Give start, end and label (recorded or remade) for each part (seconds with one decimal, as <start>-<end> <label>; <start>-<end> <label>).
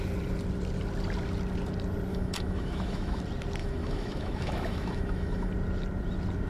0.0-2.1 recorded; 2.1-3.2 remade; 3.2-3.6 recorded; 3.6-5.5 remade; 5.5-6.5 recorded